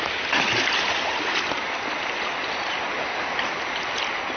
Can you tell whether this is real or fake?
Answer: real